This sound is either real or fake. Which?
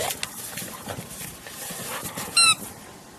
real